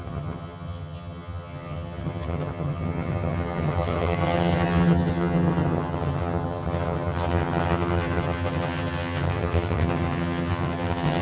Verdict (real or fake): fake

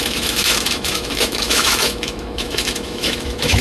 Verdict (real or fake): fake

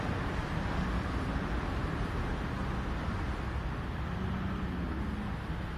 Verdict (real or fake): real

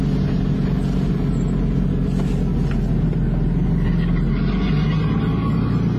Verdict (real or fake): real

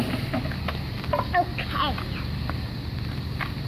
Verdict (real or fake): real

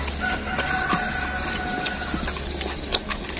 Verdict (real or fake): real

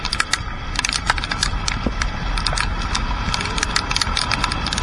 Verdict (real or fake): real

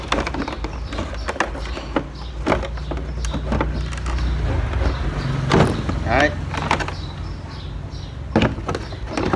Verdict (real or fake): real